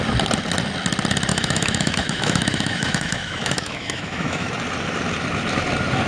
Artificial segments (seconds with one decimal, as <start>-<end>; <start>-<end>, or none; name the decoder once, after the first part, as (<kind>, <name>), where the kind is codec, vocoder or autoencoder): 1.3-4.5 (autoencoder, DAC-VAE)